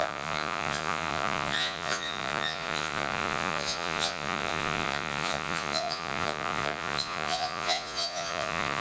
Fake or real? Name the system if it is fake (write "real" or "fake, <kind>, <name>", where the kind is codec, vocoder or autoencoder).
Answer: fake, vocoder, Vocos